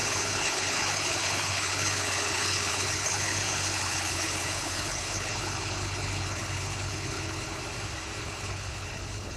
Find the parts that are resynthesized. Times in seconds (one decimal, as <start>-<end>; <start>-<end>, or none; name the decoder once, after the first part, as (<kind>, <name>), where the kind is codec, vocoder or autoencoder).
0.0-7.6 (codec, HILCodec); 8.2-9.4